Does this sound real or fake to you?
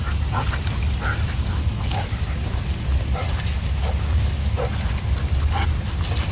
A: real